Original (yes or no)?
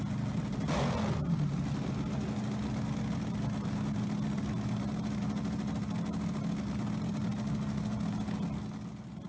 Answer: yes